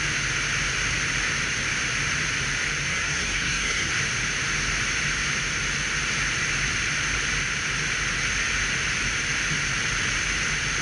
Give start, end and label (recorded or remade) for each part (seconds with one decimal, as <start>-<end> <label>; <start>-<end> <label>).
0.0-2.9 recorded; 2.9-3.9 remade; 3.9-10.8 recorded